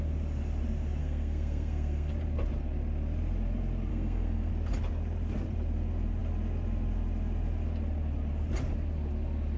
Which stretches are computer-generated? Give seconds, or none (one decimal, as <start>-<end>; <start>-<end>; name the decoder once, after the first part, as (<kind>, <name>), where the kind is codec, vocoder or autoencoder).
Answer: 1.0-2.1 (codec, SNAC); 3.9-4.5